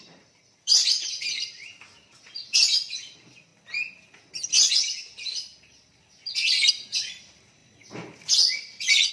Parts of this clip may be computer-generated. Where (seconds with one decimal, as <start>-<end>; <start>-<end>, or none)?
0.0-3.5; 6.7-9.1